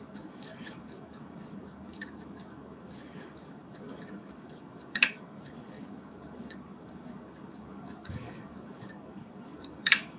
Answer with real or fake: fake